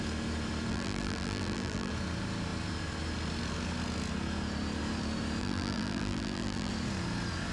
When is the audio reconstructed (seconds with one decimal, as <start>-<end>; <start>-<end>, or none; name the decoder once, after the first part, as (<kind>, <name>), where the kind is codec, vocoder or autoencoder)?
0.7-1.9 (vocoder, BigVGAN v2); 5.4-6.7